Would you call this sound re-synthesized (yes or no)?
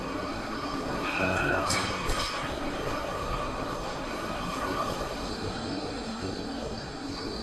yes